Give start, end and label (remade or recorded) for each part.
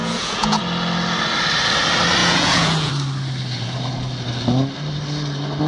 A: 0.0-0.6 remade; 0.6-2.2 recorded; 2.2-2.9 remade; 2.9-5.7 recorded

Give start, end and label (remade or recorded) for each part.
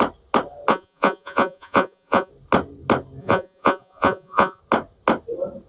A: 0.0-0.7 recorded; 0.7-2.3 remade; 2.3-3.2 recorded; 3.2-4.6 remade; 4.6-5.7 recorded